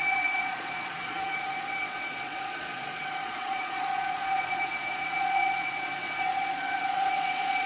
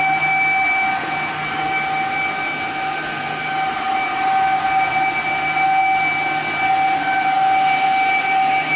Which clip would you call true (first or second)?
second